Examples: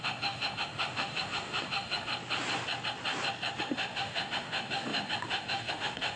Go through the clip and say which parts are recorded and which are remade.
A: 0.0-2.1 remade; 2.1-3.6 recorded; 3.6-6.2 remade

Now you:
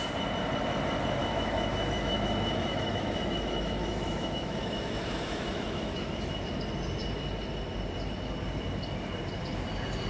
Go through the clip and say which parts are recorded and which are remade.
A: 0.0-1.2 recorded; 1.2-6.5 remade; 6.5-10.1 recorded